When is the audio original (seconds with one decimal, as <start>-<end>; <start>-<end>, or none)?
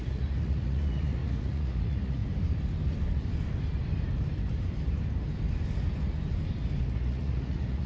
2.2-6.8